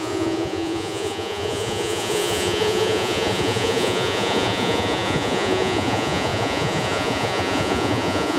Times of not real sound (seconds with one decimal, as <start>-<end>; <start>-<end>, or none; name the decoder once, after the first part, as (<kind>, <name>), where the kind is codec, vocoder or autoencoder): 0.0-8.4 (vocoder, Vocos)